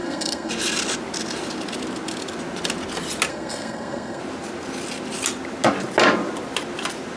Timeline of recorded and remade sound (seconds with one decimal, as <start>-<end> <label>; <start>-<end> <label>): 0.0-0.5 remade; 0.5-3.3 recorded; 3.3-4.2 remade; 4.2-7.2 recorded